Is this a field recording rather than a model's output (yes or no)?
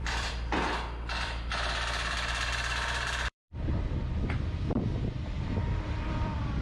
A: no